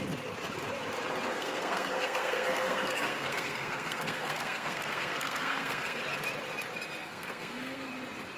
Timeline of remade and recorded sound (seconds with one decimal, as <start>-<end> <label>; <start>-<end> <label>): 0.0-1.3 recorded; 1.3-6.0 remade; 6.0-7.0 recorded; 7.0-7.9 remade; 7.9-8.4 recorded